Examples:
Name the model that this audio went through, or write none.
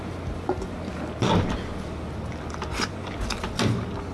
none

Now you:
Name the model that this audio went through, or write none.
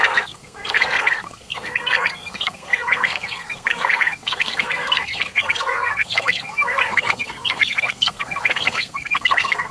codec, SNAC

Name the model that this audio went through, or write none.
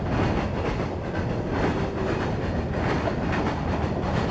none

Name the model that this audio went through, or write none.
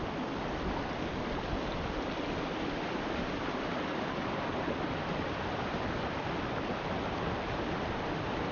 none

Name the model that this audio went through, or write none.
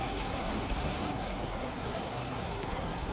codec, SNAC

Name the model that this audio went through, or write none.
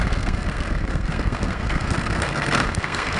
codec, SNAC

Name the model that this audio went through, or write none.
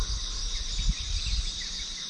none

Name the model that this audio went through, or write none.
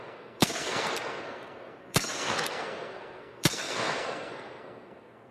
codec, SNAC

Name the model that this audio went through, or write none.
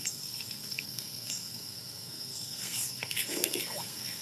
codec, SNAC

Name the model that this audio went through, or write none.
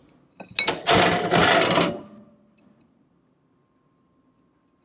none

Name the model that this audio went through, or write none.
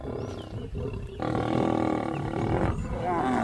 none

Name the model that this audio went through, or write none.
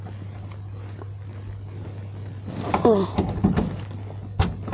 none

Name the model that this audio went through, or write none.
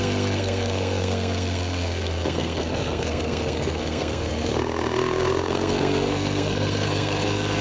codec, SNAC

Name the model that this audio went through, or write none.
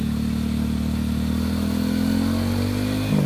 none